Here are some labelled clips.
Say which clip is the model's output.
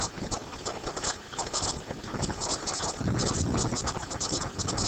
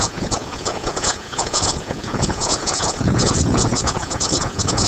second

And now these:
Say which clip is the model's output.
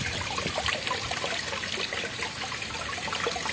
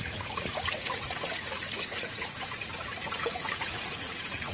second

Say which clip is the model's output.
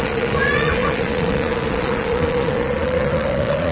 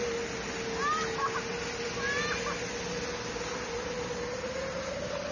first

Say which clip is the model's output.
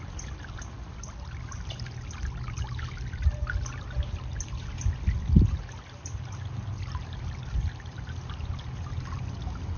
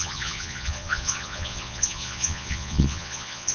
second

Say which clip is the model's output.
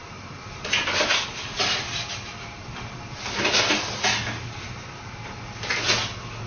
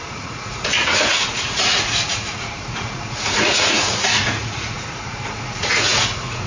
second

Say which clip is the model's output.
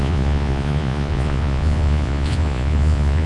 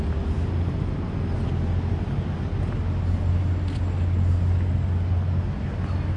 first